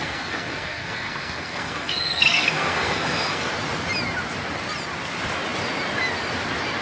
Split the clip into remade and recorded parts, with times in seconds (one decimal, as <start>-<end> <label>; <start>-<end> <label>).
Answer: 0.0-3.5 remade; 3.5-6.8 recorded